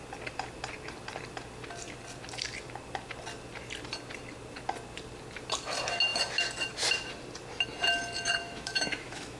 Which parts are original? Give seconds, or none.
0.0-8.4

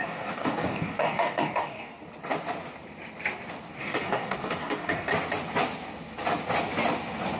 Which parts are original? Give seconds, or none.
1.9-3.8; 5.1-7.4

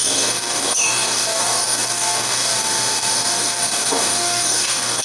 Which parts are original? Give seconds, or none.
none

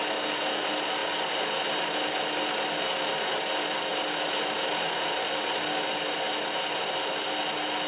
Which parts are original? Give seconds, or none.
0.0-7.9

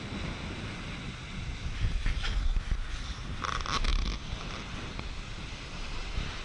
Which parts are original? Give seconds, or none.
0.0-6.4

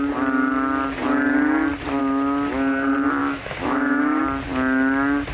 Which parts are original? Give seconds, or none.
0.0-3.2; 4.2-5.3

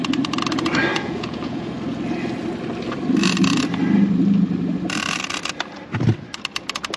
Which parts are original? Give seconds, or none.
0.0-0.9; 1.7-7.0

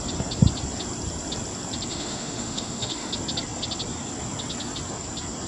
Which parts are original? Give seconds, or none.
0.0-1.9; 3.1-5.5